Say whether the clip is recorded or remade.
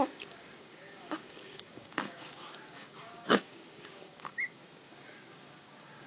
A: remade